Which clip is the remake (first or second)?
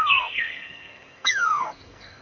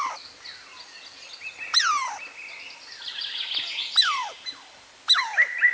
first